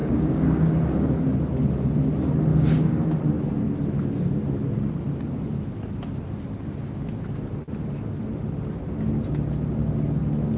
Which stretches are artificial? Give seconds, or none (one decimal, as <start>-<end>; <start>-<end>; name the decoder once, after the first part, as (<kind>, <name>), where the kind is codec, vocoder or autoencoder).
0.0-1.2 (codec, DAC); 2.5-3.1